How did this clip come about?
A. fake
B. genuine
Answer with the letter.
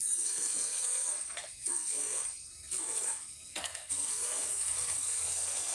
A